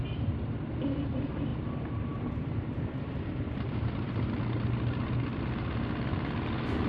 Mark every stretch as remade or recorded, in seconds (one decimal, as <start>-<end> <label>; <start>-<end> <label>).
0.0-1.5 recorded; 1.5-4.4 remade; 4.4-6.9 recorded